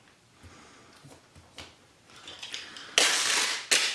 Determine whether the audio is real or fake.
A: real